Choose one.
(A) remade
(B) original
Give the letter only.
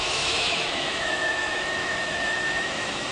A